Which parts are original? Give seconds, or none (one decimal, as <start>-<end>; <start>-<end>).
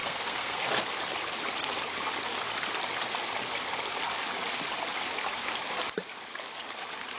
0.7-7.2